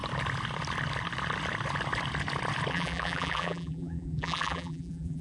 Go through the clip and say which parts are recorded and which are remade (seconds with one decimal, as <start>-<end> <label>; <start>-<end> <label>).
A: 0.0-2.7 recorded; 2.7-5.2 remade